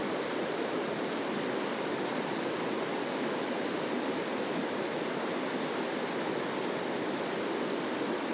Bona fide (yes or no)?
yes